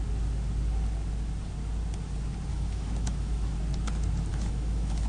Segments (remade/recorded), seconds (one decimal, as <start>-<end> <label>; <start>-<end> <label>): 0.0-2.5 recorded; 2.5-3.6 remade; 3.6-4.3 recorded; 4.3-5.1 remade